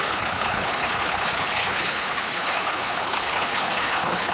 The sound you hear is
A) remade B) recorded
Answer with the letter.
A